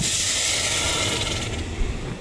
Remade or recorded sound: recorded